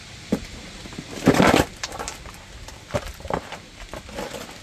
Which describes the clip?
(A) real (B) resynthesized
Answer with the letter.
A